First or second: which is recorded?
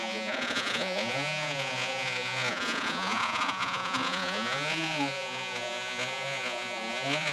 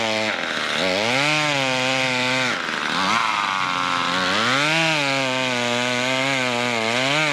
second